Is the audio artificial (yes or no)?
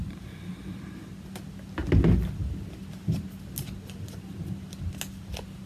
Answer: no